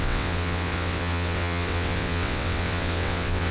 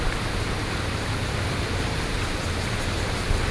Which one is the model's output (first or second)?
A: first